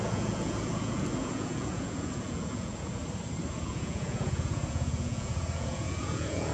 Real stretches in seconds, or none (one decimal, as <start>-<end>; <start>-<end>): 3.0-3.5